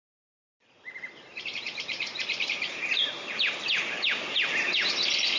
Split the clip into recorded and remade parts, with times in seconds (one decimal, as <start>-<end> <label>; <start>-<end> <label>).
0.0-0.4 recorded; 0.4-3.6 remade; 3.6-5.4 recorded